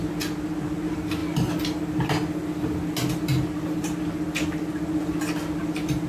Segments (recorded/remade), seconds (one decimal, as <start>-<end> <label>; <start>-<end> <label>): 0.0-6.1 recorded